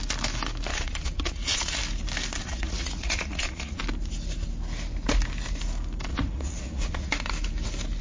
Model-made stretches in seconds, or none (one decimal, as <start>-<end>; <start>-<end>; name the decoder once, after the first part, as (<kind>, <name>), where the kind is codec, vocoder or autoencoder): 0.7-1.8 (vocoder, Vocos); 2.4-3.8; 6.1-7.1